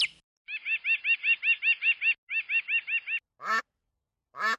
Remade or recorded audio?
recorded